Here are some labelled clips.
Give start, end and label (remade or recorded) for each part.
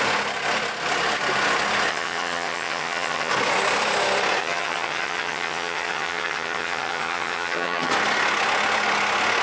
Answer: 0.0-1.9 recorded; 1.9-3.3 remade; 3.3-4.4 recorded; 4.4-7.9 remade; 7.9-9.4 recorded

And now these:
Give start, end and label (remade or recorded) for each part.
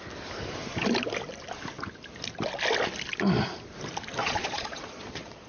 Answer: 0.0-4.2 recorded; 4.2-5.5 remade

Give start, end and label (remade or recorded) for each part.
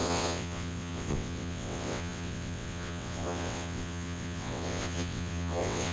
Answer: 0.0-5.9 remade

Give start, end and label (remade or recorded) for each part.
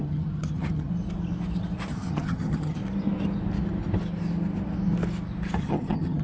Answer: 0.0-0.9 remade; 0.9-1.9 recorded; 1.9-2.8 remade; 2.8-5.6 recorded; 5.6-6.2 remade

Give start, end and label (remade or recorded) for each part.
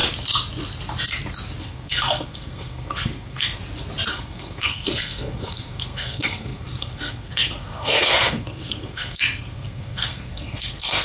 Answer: 0.0-1.6 recorded; 1.6-3.6 remade; 3.6-4.1 recorded; 4.1-11.0 remade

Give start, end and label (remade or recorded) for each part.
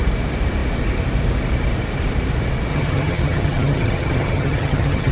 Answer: 0.0-2.7 recorded; 2.7-5.1 remade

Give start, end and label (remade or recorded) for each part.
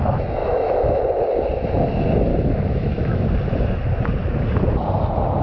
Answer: 0.0-0.4 recorded; 0.4-1.0 remade; 1.0-2.3 recorded; 2.3-3.2 remade; 3.2-5.4 recorded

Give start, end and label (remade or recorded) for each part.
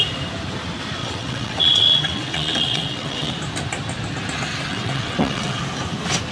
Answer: 0.0-1.0 recorded; 1.0-3.3 remade; 3.3-4.7 recorded; 4.7-5.6 remade; 5.6-6.3 recorded